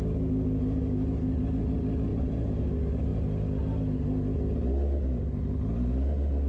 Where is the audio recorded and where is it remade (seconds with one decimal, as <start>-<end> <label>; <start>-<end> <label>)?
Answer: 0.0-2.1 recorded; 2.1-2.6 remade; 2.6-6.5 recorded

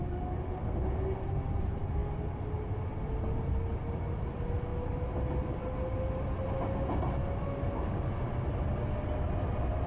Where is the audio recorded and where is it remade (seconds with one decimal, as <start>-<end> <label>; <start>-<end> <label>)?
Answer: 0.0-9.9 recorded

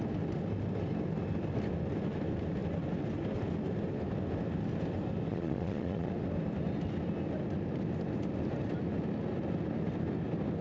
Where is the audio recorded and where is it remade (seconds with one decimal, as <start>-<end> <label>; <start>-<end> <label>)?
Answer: 0.0-5.3 recorded; 5.3-6.1 remade; 6.1-10.6 recorded

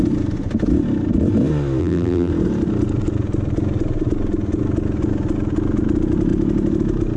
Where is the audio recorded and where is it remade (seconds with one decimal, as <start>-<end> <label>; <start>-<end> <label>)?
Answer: 0.0-1.8 recorded; 1.8-2.3 remade; 2.3-7.2 recorded

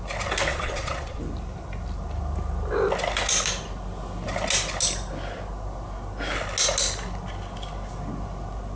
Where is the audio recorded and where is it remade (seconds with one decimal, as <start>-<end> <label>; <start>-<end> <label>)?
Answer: 0.0-0.5 recorded; 0.5-1.2 remade; 1.2-8.8 recorded